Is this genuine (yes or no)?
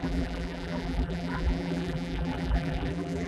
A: no